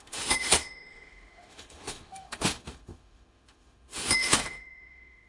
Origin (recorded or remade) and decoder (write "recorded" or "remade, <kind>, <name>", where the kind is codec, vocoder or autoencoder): remade, autoencoder, DAC-VAE